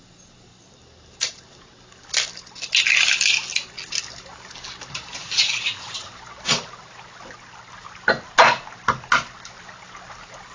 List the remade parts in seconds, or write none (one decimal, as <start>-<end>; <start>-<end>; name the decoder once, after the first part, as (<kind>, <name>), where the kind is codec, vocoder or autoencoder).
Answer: 0.5-1.4 (vocoder, BigVGAN v2)